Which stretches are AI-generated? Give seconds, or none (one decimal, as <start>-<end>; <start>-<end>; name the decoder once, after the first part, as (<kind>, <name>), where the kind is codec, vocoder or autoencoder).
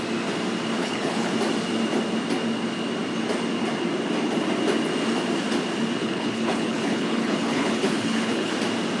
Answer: 0.8-1.3 (codec, HILCodec); 6.0-8.5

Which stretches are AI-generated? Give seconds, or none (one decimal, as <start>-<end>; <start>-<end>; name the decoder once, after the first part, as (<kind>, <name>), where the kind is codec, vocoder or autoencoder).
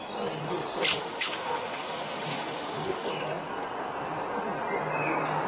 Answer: 0.9-3.1 (autoencoder, DAC-VAE)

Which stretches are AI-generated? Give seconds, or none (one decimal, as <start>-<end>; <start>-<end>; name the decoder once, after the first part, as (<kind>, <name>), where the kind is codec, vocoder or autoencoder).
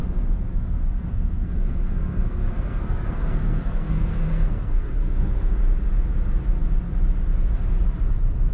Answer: 0.5-5.6 (codec, SNAC)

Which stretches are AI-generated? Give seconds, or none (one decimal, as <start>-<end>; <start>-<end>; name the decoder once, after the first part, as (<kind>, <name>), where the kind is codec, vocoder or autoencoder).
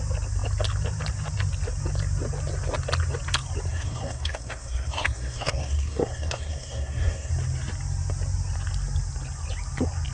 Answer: 3.7-7.3 (codec, SNAC)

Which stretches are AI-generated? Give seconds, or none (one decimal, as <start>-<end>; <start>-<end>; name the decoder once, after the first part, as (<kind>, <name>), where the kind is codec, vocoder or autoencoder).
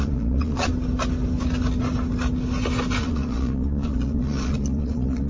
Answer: 0.0-0.7 (vocoder, Vocos); 3.0-5.3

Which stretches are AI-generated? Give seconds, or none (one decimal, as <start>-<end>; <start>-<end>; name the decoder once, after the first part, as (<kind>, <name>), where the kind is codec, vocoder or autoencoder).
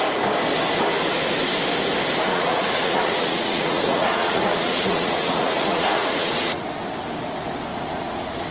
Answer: 2.3-6.6 (vocoder, Vocos); 7.7-8.5